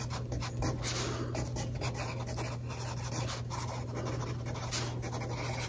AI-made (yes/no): no